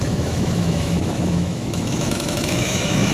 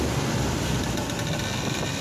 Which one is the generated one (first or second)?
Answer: first